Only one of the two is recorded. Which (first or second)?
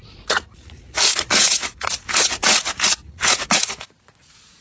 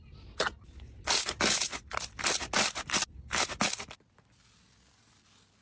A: second